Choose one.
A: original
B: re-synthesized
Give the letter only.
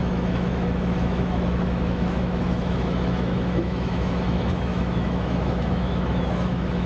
B